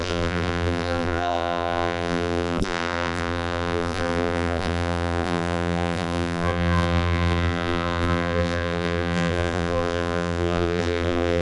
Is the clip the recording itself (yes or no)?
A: no